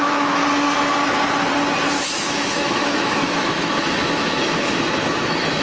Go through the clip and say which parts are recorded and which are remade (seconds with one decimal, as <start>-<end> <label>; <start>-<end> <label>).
0.0-0.4 remade; 0.4-1.9 recorded; 1.9-5.6 remade